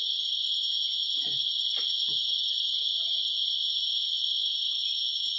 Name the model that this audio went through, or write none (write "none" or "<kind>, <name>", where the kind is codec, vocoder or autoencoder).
none